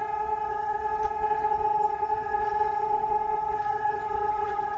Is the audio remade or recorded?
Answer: remade